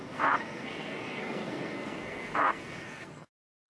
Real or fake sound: fake